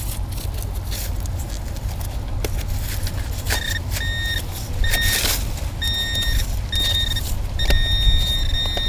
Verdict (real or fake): real